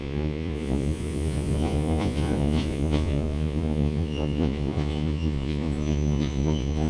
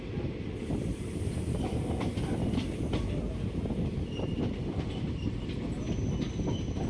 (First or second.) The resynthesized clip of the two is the first